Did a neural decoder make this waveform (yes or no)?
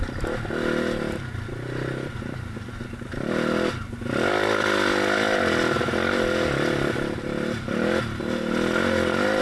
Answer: no